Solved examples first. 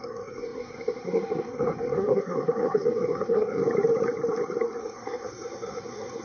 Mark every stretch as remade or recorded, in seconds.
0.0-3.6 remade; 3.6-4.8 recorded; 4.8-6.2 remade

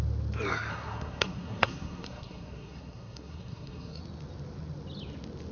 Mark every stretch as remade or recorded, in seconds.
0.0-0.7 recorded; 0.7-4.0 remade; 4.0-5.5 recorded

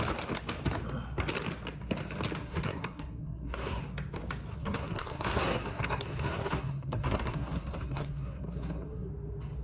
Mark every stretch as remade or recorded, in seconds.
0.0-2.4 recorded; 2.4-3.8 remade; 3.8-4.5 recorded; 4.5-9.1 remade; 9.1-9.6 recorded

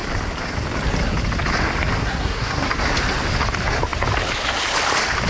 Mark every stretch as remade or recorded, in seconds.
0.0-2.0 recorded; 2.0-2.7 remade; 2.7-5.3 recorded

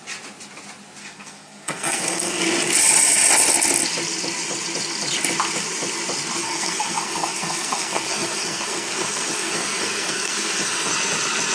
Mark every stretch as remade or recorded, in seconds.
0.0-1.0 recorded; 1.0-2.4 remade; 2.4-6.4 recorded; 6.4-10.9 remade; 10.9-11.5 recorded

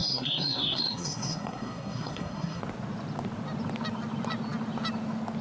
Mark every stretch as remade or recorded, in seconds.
0.0-2.6 remade; 2.6-5.4 recorded